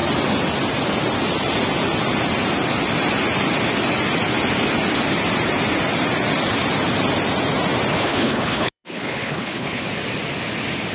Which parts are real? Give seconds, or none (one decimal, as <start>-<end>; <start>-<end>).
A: 0.0-7.9; 9.8-10.9